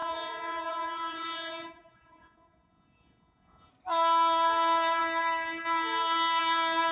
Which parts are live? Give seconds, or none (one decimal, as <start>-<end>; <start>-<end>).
3.7-6.9